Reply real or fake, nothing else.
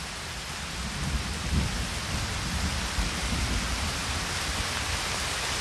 real